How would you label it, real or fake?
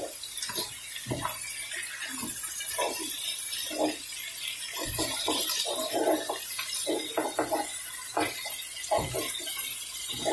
real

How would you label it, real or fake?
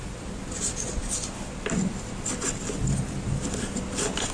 real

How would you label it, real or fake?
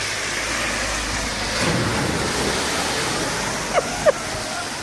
real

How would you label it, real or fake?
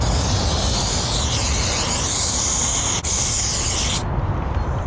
real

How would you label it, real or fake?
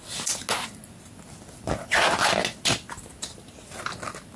real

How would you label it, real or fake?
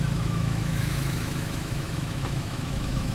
fake